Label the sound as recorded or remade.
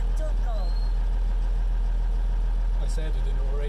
recorded